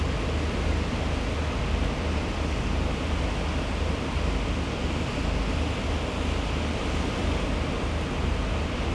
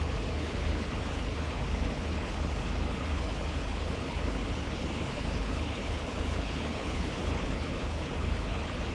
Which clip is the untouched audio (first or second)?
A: first